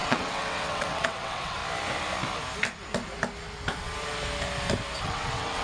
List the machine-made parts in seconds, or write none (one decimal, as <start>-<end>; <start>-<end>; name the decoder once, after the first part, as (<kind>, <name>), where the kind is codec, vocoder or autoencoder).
0.0-1.6 (vocoder, WaveNeXt); 5.0-5.6

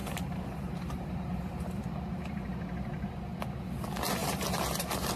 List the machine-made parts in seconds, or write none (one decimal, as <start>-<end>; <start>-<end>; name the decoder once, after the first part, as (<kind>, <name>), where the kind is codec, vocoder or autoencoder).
0.0-1.8 (vocoder, BigVGAN v2); 4.2-4.8

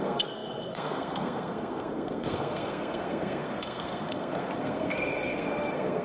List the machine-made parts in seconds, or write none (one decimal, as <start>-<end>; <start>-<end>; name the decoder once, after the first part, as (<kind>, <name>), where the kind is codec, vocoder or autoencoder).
0.0-6.0 (codec, SNAC)

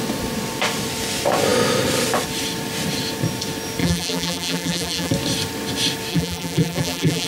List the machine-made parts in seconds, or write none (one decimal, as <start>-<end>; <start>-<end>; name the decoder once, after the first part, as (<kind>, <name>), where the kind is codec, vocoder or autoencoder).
3.8-5.1 (vocoder, BigVGAN v2); 6.1-7.3